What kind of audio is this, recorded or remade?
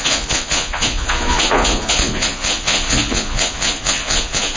remade